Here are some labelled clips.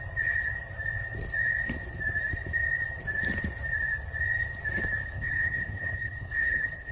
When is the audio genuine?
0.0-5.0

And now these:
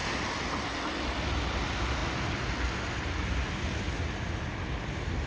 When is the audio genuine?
0.0-5.3

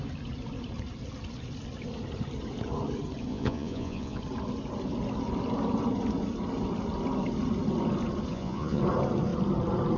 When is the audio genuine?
0.0-3.3; 4.2-8.3; 8.8-10.0